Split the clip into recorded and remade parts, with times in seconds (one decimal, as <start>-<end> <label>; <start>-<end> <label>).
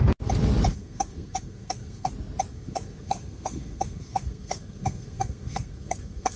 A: 0.0-0.7 recorded; 0.7-2.1 remade; 2.1-2.5 recorded; 2.5-6.4 remade